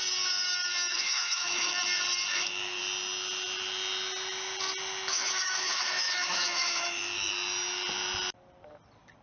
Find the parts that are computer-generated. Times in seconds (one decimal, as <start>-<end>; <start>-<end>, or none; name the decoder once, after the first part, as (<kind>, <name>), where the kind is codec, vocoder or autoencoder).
0.9-1.7 (autoencoder, DAC-VAE); 2.3-2.8; 5.1-7.3